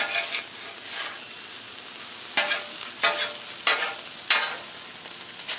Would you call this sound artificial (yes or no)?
no